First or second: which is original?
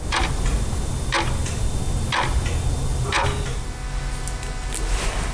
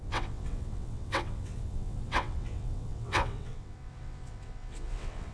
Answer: first